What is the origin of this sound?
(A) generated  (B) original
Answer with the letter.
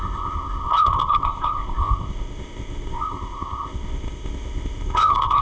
A